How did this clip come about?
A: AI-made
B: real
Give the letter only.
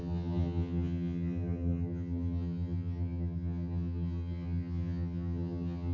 A